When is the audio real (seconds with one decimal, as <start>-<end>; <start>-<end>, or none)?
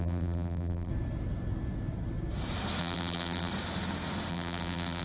0.9-2.8; 3.5-4.3